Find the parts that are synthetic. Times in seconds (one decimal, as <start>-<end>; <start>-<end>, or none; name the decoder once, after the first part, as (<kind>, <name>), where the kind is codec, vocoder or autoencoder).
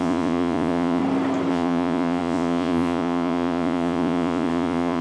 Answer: 0.0-1.0 (vocoder, Vocos); 1.5-5.0